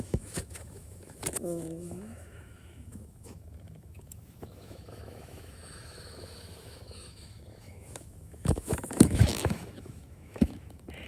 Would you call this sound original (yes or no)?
no